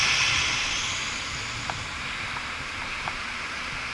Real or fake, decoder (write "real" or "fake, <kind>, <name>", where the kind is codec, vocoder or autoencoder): real